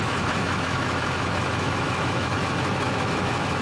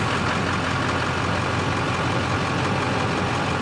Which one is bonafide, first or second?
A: second